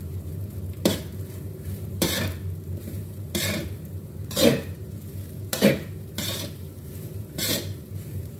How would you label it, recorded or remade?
remade